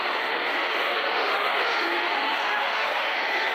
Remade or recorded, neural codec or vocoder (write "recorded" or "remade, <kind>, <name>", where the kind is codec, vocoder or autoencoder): remade, autoencoder, DAC-VAE